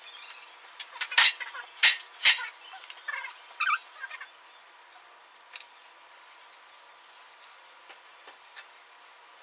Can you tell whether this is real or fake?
real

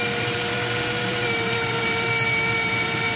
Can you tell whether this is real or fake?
fake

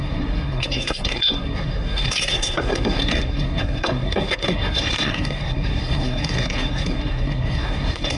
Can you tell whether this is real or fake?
fake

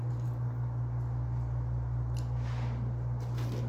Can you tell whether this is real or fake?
real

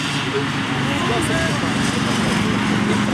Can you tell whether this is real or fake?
real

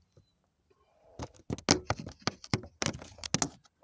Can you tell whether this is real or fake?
real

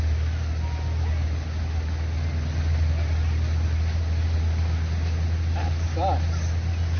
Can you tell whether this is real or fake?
real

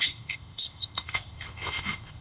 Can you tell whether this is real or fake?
fake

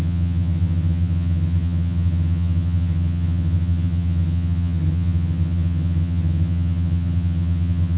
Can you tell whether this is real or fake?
fake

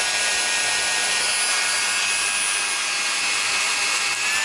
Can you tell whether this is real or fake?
real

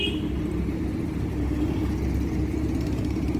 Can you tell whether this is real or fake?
real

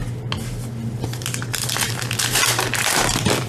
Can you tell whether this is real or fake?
real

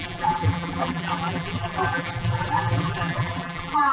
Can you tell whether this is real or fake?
fake